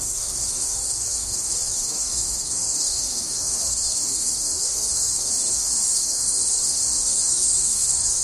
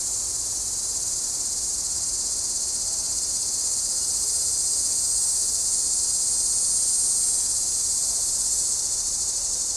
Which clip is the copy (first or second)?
first